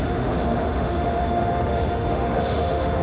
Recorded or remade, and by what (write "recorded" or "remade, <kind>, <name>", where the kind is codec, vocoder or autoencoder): remade, autoencoder, DAC-VAE